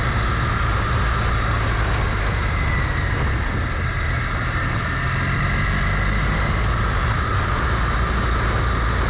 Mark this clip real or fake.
real